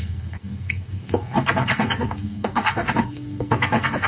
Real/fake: fake